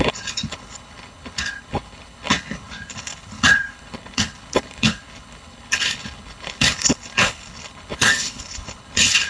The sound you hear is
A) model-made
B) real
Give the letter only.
A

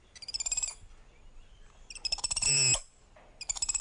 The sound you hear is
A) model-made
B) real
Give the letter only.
B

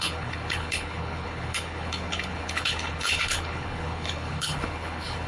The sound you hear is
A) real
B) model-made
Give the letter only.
B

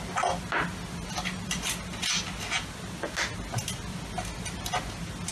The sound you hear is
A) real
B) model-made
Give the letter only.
A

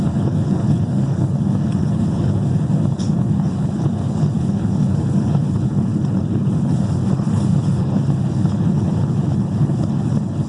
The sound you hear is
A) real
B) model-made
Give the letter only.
B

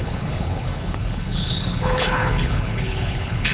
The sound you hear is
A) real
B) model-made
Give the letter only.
B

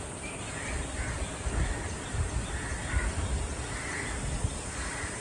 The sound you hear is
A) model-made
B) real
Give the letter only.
B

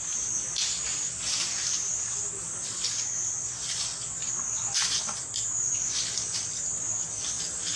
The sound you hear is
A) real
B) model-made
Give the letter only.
A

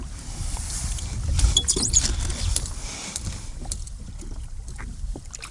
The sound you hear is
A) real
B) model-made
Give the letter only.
A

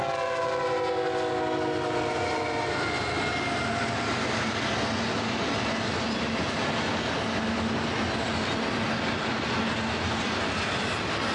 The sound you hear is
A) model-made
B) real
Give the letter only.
B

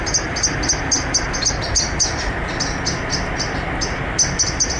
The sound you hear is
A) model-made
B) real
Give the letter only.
B